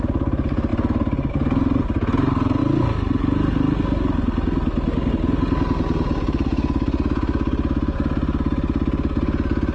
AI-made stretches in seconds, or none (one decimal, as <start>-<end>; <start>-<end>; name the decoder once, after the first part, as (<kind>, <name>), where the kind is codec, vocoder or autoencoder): none